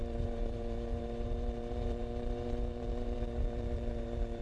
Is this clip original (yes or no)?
no